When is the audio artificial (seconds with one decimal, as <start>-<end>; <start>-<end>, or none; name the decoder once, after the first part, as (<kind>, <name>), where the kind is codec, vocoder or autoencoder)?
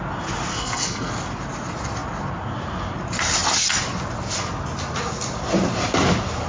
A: 0.5-1.1 (codec, SNAC)